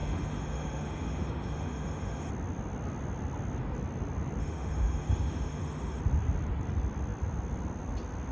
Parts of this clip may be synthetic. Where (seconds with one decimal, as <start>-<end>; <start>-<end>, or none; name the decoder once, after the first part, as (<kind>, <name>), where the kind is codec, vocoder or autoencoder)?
0.0-2.3 (autoencoder, DAC-VAE); 4.4-6.0